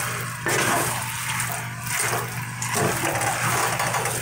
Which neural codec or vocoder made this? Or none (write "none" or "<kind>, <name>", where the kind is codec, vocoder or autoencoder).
none